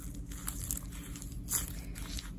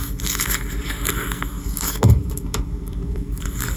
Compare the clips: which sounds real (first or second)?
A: first